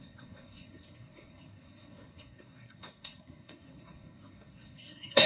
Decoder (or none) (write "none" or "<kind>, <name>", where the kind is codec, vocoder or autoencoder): codec, SNAC